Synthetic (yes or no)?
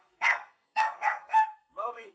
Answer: yes